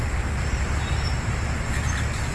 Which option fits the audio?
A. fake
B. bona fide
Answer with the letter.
B